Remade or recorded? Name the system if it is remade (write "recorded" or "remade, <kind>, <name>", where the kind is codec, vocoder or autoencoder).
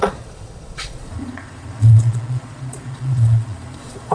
remade, vocoder, Vocos